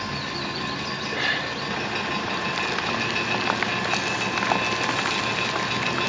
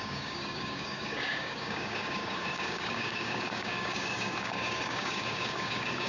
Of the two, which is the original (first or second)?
first